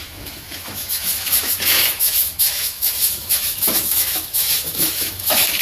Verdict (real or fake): fake